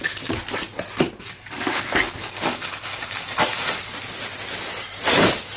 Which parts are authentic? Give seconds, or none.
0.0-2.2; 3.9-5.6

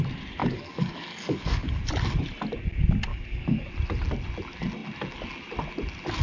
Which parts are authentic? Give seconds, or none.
0.0-0.4; 1.8-3.1; 3.7-6.2

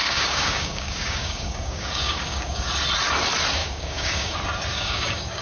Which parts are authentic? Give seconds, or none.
2.7-3.6; 4.3-4.7